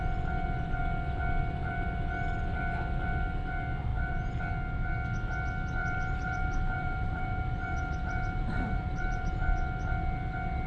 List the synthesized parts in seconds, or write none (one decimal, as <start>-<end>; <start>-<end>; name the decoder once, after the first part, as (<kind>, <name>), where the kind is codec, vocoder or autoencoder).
3.9-4.4 (vocoder, BigVGAN v2); 5.8-9.3